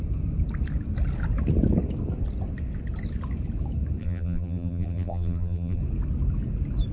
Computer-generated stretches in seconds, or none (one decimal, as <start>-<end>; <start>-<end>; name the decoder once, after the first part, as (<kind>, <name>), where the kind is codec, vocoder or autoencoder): 4.0-5.8 (vocoder, BigVGAN v2)

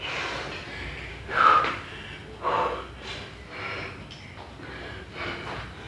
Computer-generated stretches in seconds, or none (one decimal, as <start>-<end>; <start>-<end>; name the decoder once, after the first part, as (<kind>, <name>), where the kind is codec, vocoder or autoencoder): 1.1-1.6 (autoencoder, DAC-VAE)

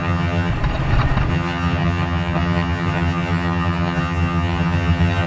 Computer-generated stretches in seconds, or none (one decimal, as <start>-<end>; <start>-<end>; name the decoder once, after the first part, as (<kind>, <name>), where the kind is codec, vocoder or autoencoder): 0.0-0.5 (vocoder, HiFi-GAN); 1.3-5.3

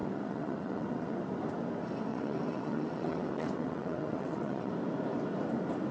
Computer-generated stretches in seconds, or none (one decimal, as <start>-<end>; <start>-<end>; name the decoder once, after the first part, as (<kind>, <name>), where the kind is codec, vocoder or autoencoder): 0.0-1.2 (vocoder, WaveNeXt); 2.1-4.7

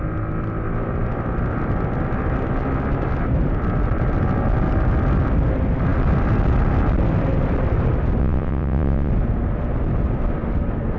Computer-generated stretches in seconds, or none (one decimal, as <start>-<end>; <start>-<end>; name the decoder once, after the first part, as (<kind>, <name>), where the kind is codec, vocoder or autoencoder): 8.2-9.1 (vocoder, WaveNeXt)

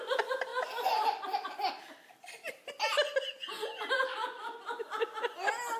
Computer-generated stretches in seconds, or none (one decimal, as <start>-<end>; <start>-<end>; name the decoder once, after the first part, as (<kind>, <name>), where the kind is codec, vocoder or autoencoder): 0.5-2.7 (vocoder, BigVGAN v2)

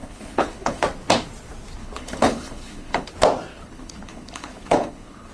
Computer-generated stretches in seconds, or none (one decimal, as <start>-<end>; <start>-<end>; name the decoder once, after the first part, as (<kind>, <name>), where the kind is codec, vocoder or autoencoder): 0.0-0.8 (codec, HILCodec); 1.8-3.1; 3.5-5.3